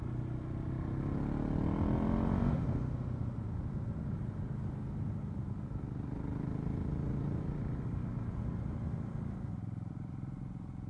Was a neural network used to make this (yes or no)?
no